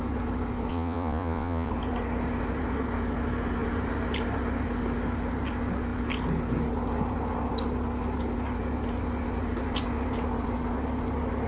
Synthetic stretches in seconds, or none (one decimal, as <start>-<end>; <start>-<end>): 0.7-1.7